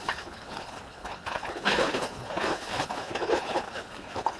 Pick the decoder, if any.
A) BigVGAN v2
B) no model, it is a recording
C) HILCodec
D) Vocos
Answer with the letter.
C